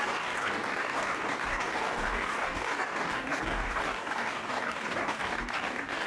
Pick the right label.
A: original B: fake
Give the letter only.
B